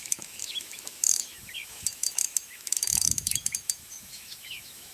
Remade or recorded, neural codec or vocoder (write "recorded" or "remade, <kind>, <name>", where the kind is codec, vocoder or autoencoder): remade, autoencoder, DAC-VAE